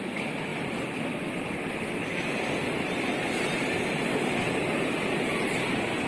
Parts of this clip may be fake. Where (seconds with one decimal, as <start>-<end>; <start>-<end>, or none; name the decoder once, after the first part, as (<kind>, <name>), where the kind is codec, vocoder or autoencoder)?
0.5-2.5 (vocoder, BigVGAN v2); 3.1-6.1